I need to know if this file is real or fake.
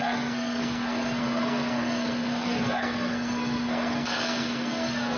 fake